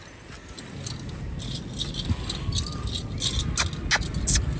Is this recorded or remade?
recorded